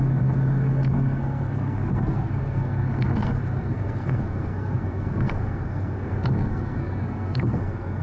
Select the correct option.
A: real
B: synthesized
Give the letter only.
B